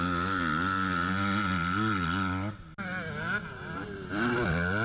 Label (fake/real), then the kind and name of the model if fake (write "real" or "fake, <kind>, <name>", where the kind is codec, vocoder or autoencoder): real